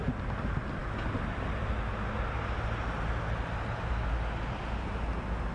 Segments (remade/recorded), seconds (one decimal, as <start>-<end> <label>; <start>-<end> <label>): 0.0-5.5 recorded